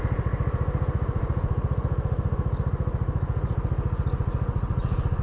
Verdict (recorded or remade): recorded